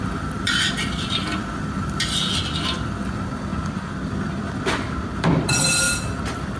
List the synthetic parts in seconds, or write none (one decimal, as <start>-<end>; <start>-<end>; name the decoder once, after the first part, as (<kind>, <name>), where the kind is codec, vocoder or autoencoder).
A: 0.0-6.6 (vocoder, BigVGAN v2)